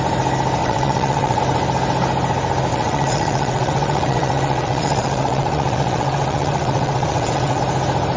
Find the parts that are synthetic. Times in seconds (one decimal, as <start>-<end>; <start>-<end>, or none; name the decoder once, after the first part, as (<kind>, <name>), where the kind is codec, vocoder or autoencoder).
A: 0.6-1.4 (vocoder, WaveNeXt); 2.7-7.6